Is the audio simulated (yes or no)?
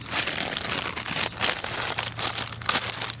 no